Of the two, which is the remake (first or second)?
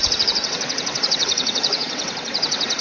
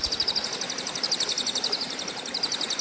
first